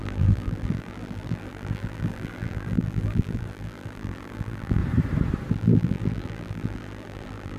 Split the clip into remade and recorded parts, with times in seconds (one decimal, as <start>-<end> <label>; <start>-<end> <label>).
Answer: 0.0-4.8 remade; 4.8-5.5 recorded; 5.5-7.6 remade